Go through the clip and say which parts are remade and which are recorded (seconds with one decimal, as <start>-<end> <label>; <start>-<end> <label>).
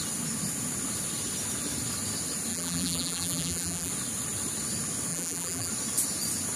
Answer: 0.0-2.5 recorded; 2.5-3.9 remade; 3.9-5.1 recorded; 5.1-5.7 remade; 5.7-6.6 recorded